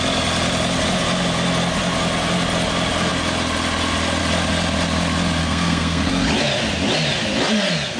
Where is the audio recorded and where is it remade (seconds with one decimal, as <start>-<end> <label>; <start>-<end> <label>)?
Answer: 0.0-5.4 recorded; 5.4-6.1 remade; 6.1-8.0 recorded